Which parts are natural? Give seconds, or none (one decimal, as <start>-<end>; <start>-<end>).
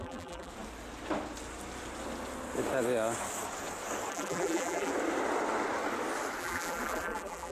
0.5-4.1; 4.9-6.4